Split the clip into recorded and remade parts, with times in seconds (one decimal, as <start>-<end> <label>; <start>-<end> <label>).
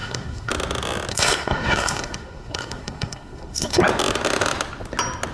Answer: 0.0-0.5 remade; 0.5-1.1 recorded; 1.1-3.8 remade; 3.8-5.3 recorded